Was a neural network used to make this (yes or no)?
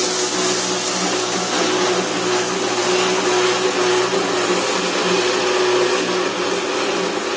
no